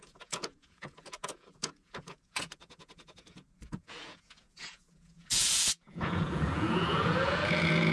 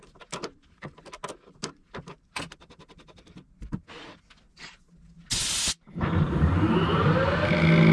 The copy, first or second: first